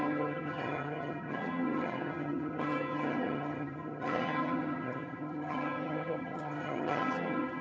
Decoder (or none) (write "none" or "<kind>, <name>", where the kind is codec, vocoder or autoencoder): vocoder, HiFi-GAN